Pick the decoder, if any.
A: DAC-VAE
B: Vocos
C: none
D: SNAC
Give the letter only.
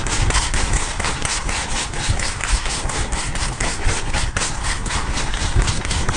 D